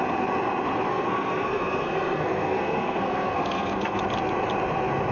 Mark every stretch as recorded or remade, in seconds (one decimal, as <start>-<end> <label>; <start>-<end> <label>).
0.0-0.9 recorded; 0.9-4.0 remade; 4.0-5.1 recorded